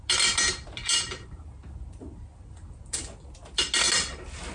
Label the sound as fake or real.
real